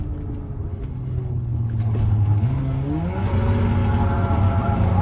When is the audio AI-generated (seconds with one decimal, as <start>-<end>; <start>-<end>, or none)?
0.7-2.6